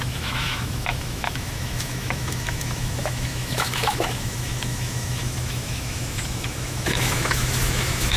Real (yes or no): no